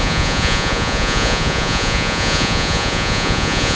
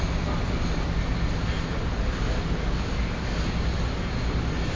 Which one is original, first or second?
second